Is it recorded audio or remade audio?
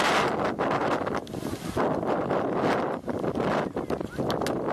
recorded